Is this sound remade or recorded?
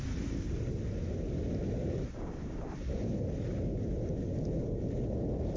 recorded